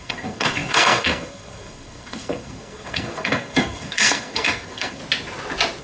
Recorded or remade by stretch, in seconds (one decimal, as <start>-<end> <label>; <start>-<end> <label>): 0.0-5.0 remade; 5.0-5.8 recorded